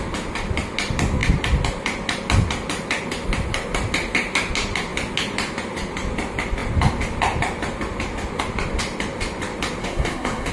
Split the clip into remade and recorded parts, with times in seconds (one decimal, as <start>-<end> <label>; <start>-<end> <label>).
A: 0.0-9.8 recorded; 9.8-10.5 remade